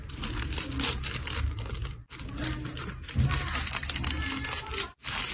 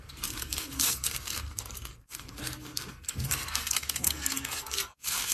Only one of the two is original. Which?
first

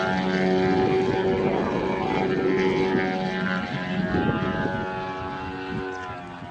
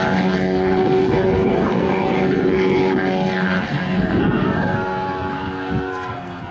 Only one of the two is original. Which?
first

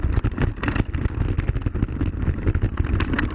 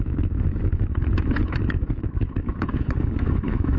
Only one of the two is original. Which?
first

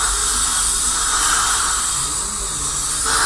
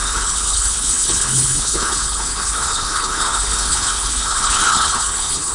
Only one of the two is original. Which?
first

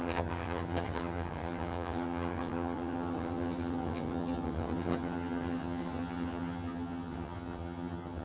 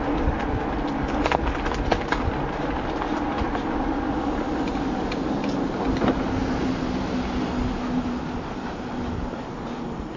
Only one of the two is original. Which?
second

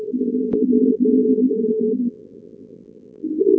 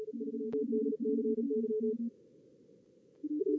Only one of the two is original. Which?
second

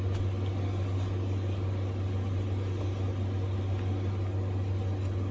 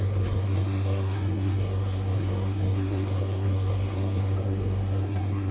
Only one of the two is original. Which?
first